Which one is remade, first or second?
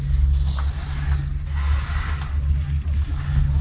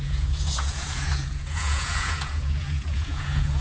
second